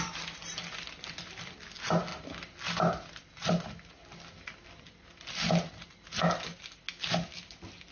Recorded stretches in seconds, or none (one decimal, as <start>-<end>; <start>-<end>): 0.0-7.9